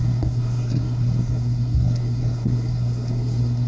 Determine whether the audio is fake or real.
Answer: fake